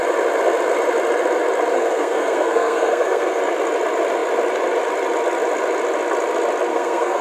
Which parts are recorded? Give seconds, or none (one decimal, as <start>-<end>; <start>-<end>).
0.0-1.7; 3.4-6.7